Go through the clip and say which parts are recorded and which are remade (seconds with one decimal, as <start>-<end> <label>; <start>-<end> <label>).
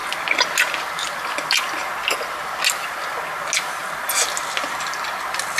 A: 0.0-5.6 recorded